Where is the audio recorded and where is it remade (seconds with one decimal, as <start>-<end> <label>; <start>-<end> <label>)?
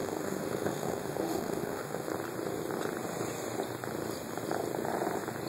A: 0.0-2.1 remade; 2.1-5.5 recorded